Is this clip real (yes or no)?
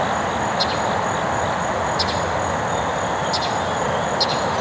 yes